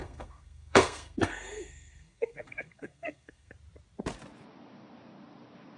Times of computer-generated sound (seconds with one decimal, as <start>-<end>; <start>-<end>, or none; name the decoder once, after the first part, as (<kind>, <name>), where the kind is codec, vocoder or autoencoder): 0.0-3.5 (codec, SNAC)